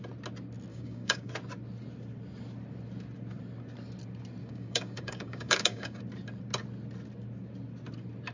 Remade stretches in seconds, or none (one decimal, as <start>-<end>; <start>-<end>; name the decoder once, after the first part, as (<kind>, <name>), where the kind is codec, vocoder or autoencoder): 0.7-1.3 (codec, DAC); 4.4-6.0